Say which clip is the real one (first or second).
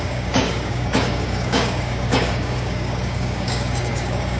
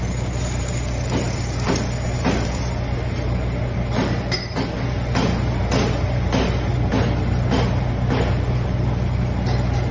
second